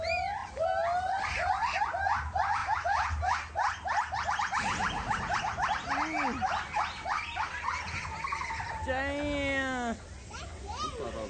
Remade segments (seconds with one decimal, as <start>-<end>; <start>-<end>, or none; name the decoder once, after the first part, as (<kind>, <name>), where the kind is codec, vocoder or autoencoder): none